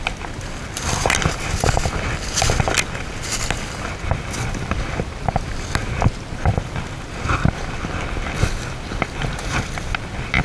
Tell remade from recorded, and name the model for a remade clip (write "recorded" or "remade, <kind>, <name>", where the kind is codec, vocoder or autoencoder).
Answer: recorded